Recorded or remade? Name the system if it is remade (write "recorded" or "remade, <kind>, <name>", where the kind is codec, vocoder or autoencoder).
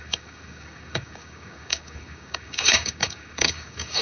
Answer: remade, codec, DAC